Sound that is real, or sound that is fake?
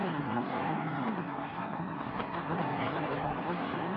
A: fake